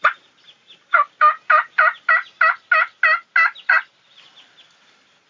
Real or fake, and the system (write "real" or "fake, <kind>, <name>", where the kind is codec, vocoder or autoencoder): real